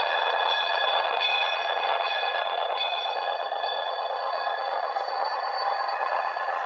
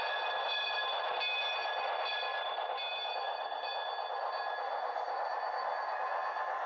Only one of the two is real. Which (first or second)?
second